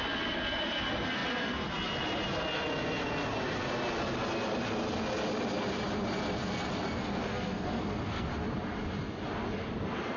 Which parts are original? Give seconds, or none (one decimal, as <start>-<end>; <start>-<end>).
0.0-7.0; 8.3-10.2